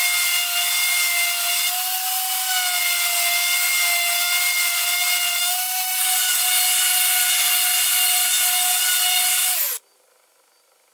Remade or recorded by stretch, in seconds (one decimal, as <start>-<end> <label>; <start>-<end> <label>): 0.0-5.4 recorded; 5.4-6.0 remade; 6.0-10.9 recorded